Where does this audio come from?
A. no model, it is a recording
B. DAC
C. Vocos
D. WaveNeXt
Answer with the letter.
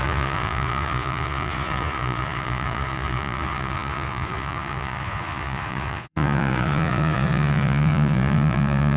C